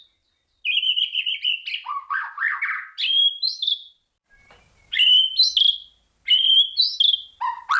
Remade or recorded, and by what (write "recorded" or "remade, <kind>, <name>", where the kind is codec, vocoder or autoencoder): recorded